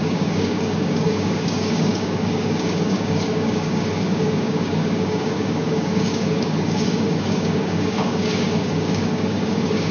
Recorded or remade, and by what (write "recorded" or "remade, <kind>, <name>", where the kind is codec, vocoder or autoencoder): remade, codec, DAC